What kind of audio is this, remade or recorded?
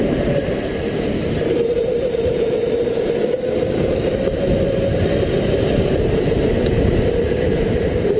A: remade